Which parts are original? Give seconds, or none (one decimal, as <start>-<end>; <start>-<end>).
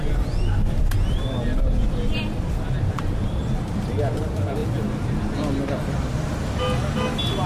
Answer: 0.0-7.5